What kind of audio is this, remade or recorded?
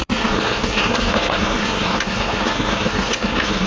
remade